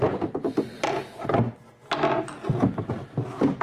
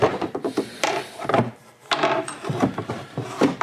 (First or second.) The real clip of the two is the first